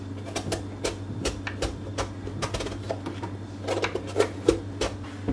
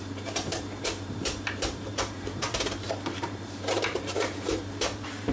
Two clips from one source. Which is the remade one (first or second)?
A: second